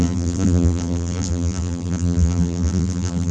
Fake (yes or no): yes